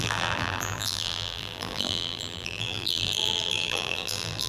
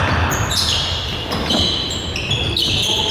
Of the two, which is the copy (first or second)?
first